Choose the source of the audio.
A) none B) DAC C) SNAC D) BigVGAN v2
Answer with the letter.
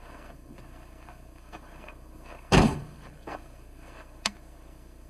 C